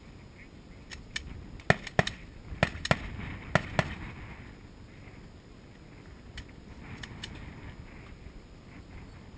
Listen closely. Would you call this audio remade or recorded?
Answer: recorded